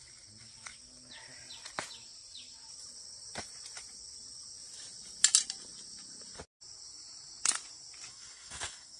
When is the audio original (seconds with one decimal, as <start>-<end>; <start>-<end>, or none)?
0.0-8.1

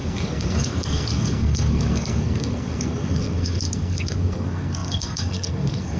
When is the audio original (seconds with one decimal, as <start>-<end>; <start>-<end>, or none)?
none